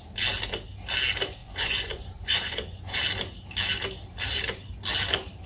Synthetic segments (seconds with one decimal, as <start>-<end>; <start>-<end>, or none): 1.4-3.0